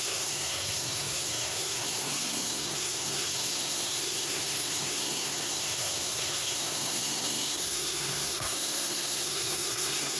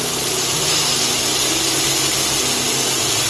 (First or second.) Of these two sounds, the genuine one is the second